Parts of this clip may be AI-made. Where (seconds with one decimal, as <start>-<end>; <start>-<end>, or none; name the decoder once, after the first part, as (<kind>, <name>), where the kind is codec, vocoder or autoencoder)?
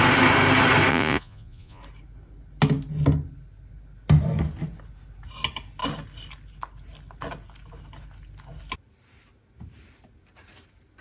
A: 0.9-1.8 (vocoder, Vocos)